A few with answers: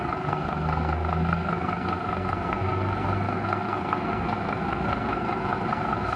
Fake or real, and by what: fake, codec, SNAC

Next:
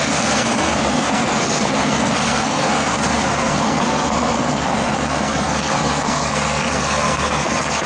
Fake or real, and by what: fake, codec, SNAC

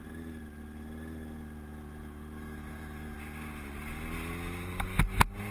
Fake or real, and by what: real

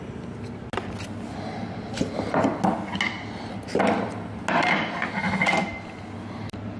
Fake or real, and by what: real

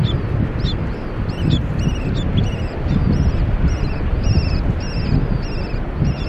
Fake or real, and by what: real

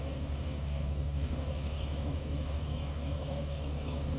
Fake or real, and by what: fake, codec, DAC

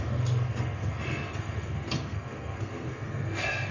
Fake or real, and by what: fake, codec, SNAC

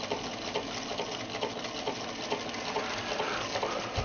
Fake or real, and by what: real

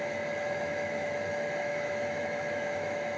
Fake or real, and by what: fake, autoencoder, DAC-VAE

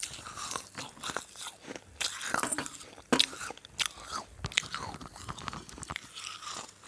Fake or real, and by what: real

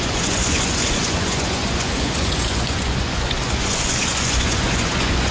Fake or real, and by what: fake, vocoder, Vocos